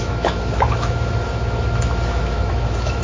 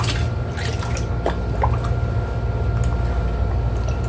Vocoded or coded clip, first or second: first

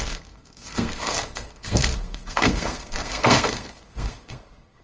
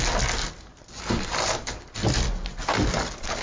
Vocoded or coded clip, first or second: first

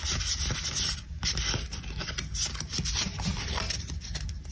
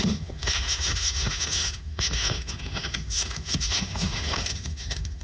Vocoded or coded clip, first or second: second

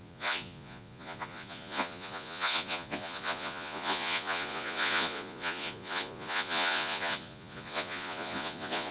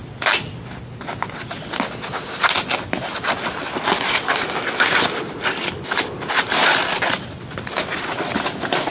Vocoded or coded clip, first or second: first